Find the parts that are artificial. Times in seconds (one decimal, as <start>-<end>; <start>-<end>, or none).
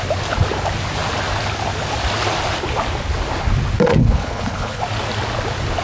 4.0-4.8